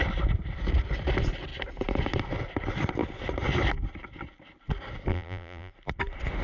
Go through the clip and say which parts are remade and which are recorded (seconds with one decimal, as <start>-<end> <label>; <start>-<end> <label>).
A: 0.0-5.1 recorded; 5.1-5.7 remade; 5.7-6.4 recorded